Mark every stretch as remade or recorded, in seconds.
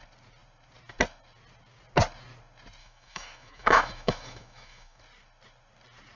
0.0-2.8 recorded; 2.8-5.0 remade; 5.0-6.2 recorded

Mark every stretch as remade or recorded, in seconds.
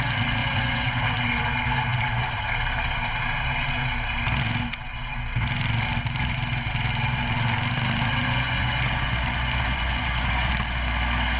0.0-0.4 recorded; 0.4-1.0 remade; 1.0-8.2 recorded; 8.2-10.5 remade; 10.5-11.4 recorded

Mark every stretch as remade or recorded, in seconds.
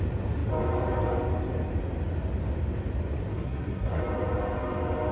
0.0-3.3 recorded; 3.3-4.0 remade; 4.0-5.1 recorded